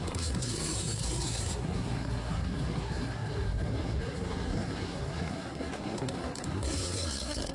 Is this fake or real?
fake